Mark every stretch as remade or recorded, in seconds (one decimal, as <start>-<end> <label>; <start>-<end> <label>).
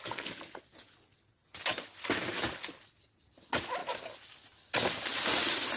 0.0-5.8 recorded